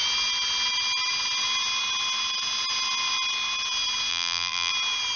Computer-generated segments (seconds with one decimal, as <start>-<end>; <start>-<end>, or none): 4.1-4.7

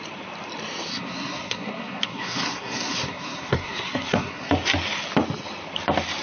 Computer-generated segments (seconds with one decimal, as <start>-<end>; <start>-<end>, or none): 0.9-4.5

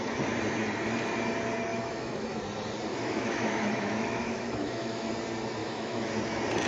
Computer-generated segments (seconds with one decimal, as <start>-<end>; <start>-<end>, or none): 1.7-2.4; 2.9-5.1; 5.6-6.1

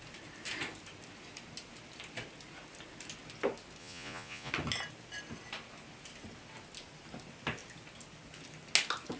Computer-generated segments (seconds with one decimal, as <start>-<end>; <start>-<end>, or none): 3.8-4.5

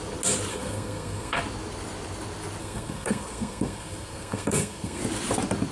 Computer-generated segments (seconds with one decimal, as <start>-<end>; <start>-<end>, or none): 0.5-1.4; 2.6-5.0

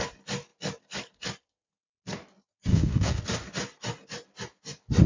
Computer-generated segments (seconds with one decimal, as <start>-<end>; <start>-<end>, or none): 2.7-3.2

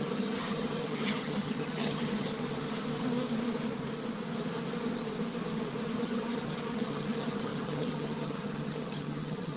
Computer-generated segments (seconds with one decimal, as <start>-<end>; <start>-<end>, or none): 0.0-2.3; 6.0-9.6

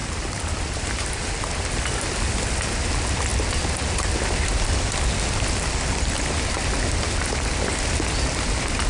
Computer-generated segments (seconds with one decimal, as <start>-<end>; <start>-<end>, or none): 0.0-1.3; 3.3-3.9